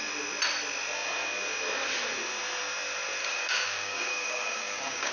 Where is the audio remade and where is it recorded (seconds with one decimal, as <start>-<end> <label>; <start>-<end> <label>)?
0.0-3.2 recorded; 3.2-5.1 remade